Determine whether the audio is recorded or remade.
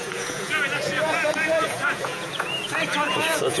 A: remade